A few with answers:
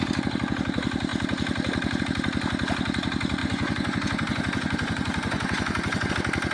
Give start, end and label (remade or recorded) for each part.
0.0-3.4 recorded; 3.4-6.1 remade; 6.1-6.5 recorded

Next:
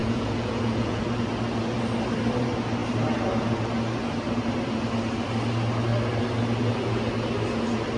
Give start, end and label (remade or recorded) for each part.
0.0-1.0 remade; 1.0-8.0 recorded

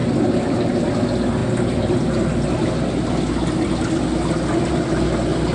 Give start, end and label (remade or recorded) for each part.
0.0-5.5 recorded